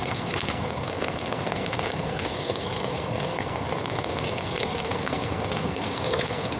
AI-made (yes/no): yes